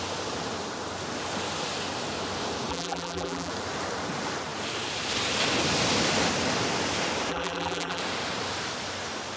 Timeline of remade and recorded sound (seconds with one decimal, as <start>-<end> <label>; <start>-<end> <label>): 0.0-2.7 recorded; 2.7-3.5 remade; 3.5-7.3 recorded; 7.3-8.0 remade; 8.0-9.4 recorded